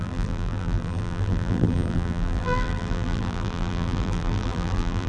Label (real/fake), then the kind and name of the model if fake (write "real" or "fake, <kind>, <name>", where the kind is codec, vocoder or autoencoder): fake, vocoder, BigVGAN v2